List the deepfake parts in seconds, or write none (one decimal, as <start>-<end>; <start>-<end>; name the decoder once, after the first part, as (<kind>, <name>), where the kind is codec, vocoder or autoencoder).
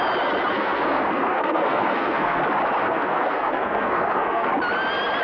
0.5-2.4 (codec, SNAC); 2.8-4.5